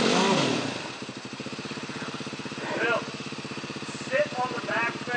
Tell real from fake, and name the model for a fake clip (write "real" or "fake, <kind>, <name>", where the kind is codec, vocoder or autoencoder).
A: real